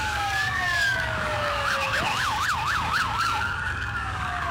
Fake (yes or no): yes